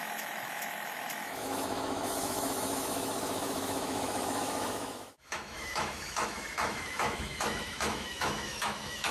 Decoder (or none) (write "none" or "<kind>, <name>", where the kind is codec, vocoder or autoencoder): autoencoder, DAC-VAE